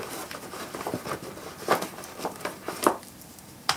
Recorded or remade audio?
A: remade